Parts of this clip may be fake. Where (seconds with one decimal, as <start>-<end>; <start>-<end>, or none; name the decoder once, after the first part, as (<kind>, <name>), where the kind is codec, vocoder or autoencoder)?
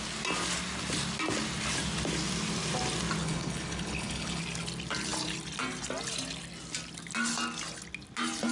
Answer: 3.2-4.4 (codec, HILCodec)